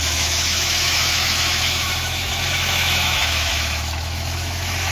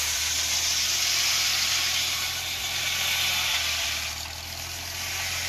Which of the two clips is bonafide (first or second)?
second